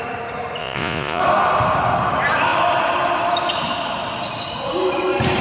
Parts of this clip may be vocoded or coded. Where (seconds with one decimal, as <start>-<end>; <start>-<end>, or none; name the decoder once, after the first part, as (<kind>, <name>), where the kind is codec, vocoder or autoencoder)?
0.6-1.2 (vocoder, Vocos)